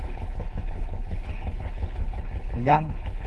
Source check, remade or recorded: remade